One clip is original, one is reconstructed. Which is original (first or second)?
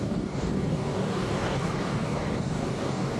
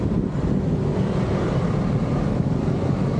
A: second